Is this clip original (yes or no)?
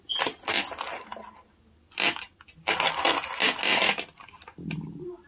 yes